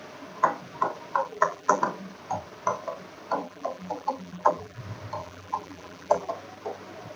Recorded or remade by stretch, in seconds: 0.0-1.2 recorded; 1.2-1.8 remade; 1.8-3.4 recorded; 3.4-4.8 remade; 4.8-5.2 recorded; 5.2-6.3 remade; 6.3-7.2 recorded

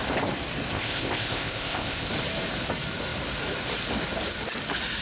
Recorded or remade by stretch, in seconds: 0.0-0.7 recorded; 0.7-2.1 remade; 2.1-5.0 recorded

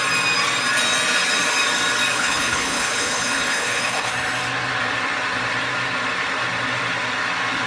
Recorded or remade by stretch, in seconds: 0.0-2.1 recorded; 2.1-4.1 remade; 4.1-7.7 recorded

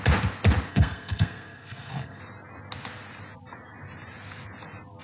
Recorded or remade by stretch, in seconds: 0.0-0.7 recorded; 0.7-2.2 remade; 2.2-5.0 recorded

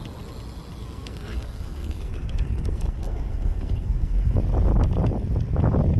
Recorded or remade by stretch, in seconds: 0.0-0.8 recorded; 0.8-4.4 remade; 4.4-6.0 recorded

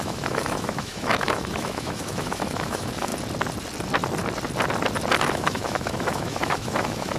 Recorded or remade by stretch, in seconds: 0.0-3.1 remade; 3.1-5.2 recorded; 5.2-7.2 remade

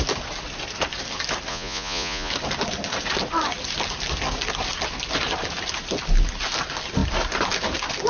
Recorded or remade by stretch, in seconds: 0.0-1.5 recorded; 1.5-2.3 remade; 2.3-8.1 recorded

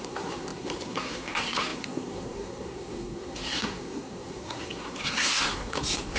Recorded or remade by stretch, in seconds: 0.0-6.2 remade